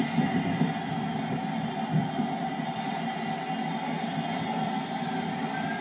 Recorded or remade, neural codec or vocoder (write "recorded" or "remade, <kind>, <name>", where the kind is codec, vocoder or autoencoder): recorded